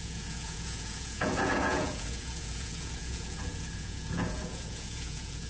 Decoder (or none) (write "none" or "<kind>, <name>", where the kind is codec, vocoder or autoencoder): vocoder, Vocos